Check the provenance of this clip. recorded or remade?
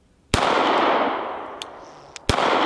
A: recorded